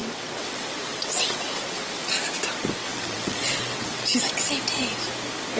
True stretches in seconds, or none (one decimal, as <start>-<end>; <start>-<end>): 2.0-2.8; 4.5-5.6